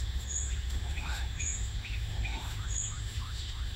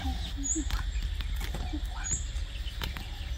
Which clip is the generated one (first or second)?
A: first